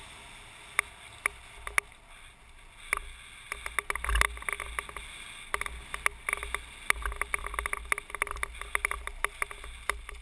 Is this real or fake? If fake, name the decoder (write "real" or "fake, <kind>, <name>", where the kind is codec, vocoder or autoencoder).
real